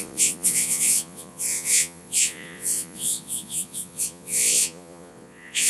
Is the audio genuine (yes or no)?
no